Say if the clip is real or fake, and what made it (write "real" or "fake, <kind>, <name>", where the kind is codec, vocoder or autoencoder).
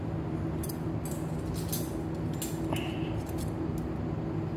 real